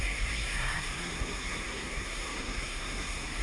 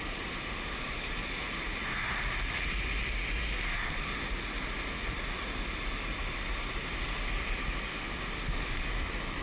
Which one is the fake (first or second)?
first